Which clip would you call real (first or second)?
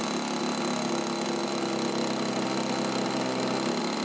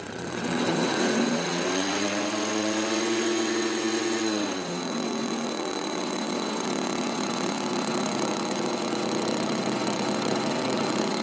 first